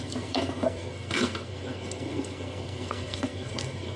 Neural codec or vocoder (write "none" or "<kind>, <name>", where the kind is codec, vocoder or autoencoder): codec, SNAC